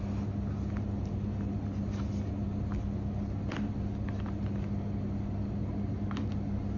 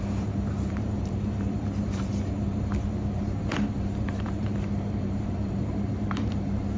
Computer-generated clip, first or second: second